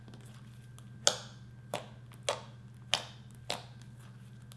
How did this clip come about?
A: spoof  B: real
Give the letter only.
B